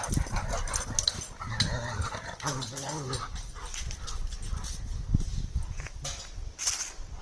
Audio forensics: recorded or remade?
recorded